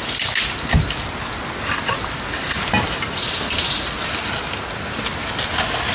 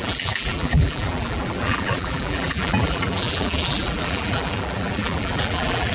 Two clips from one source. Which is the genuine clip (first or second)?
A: first